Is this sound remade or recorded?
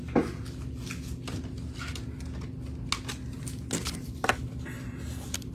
recorded